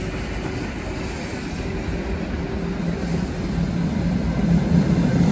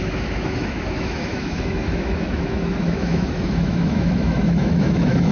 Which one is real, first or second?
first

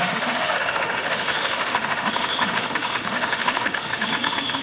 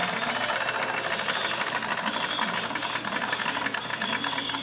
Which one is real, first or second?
second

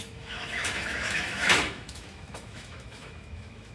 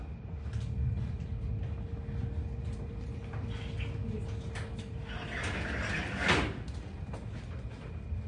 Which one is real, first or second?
second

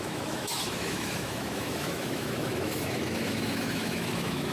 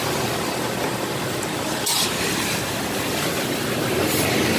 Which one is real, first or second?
second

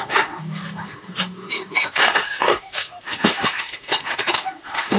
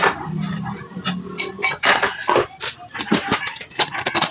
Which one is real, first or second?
second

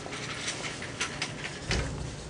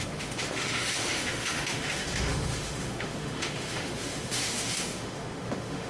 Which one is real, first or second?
first